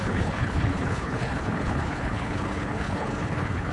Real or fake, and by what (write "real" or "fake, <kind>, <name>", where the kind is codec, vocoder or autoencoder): fake, codec, HILCodec